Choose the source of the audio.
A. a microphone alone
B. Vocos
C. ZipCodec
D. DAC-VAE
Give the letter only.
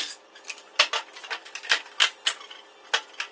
A